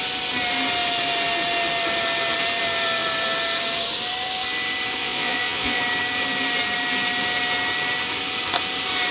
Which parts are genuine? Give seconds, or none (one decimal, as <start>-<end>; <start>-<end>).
0.0-5.0; 5.8-9.1